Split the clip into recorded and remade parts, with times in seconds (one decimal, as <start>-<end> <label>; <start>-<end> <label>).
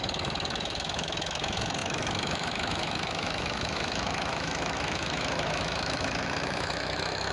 0.0-7.3 remade